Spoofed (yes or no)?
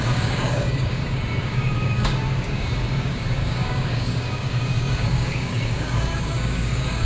yes